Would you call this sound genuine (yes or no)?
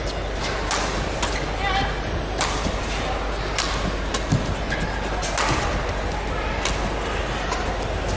yes